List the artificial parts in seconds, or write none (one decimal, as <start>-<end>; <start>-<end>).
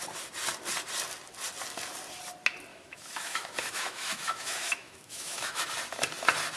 2.7-5.6